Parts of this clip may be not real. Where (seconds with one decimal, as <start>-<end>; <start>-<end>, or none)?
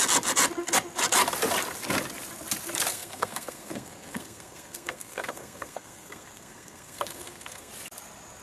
2.9-7.7